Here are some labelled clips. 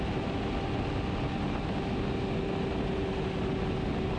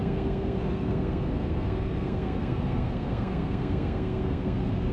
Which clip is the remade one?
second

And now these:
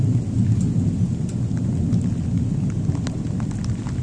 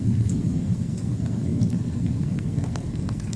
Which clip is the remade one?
second